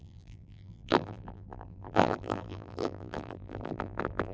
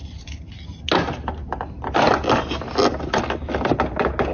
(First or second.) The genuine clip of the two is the second